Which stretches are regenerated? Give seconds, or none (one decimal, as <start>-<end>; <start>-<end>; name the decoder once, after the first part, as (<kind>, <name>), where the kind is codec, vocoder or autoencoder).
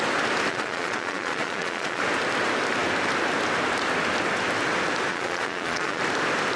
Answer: 0.5-2.0 (vocoder, Vocos); 5.1-6.0